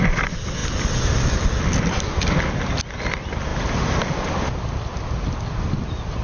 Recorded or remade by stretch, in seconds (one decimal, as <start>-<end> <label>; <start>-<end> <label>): 0.0-6.2 recorded